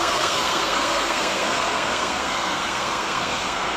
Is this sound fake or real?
fake